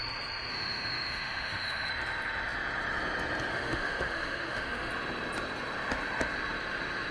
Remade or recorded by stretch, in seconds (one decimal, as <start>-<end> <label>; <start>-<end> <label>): 0.0-0.5 recorded; 0.5-1.9 remade; 1.9-3.5 recorded; 3.5-4.9 remade; 4.9-7.1 recorded